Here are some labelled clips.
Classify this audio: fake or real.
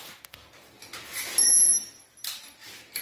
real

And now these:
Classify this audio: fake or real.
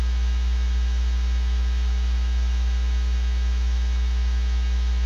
fake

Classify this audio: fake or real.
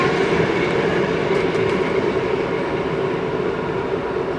real